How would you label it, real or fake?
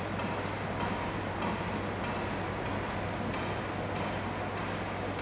real